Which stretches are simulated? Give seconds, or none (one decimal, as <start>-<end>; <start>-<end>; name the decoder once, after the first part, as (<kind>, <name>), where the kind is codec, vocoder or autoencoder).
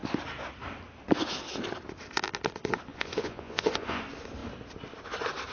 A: 2.9-4.0 (vocoder, Vocos)